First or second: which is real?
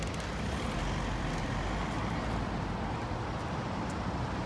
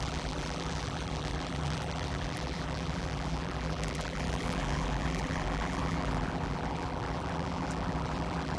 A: first